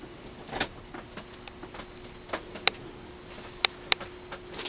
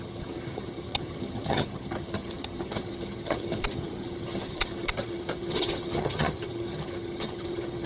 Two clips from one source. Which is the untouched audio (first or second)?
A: first